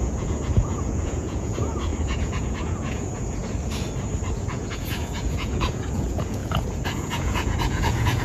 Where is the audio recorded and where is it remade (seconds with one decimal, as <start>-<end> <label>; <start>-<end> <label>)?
0.0-3.4 remade; 3.4-4.5 recorded; 4.5-8.2 remade